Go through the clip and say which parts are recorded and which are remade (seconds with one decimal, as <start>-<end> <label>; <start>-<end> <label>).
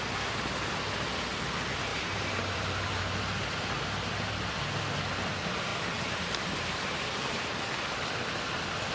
0.0-1.9 recorded; 1.9-3.0 remade; 3.0-5.7 recorded; 5.7-7.8 remade; 7.8-8.9 recorded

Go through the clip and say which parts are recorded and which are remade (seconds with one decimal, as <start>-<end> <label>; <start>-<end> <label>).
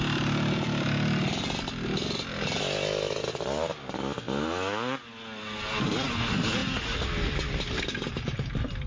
0.0-8.9 recorded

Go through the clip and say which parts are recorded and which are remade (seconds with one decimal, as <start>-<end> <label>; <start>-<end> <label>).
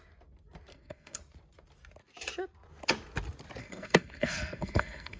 0.0-0.7 recorded; 0.7-1.2 remade; 1.2-3.6 recorded; 3.6-5.2 remade